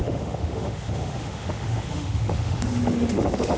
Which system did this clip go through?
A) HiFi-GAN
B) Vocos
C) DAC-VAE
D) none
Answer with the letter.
C